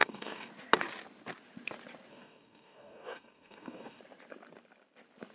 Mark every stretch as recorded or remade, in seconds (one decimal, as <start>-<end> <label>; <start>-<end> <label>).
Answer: 0.0-0.5 remade; 0.5-2.1 recorded; 2.1-4.0 remade; 4.0-5.3 recorded